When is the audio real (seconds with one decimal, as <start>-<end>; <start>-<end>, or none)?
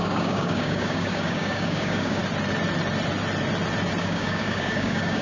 2.2-4.0